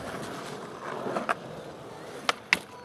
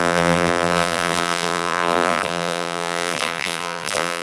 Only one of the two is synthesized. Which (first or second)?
second